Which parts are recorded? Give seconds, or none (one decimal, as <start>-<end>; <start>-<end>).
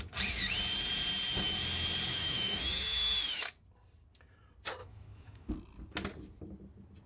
0.0-2.1; 3.4-4.8; 5.5-7.1